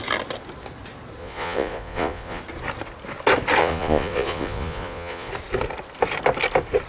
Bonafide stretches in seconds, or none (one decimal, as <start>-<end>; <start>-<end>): 0.0-1.2; 2.4-3.6; 5.3-6.9